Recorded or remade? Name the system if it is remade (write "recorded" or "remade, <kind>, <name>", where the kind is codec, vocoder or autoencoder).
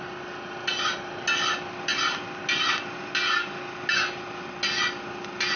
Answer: recorded